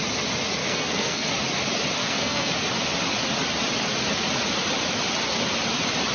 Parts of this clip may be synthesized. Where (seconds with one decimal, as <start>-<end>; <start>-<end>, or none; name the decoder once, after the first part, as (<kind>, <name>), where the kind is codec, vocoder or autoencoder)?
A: 0.6-1.3 (codec, SNAC); 2.0-2.5